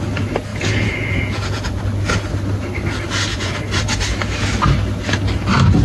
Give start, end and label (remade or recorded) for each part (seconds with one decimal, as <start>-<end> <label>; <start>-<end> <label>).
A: 0.0-0.5 recorded; 0.5-1.8 remade; 1.8-3.3 recorded; 3.3-3.8 remade; 3.8-5.8 recorded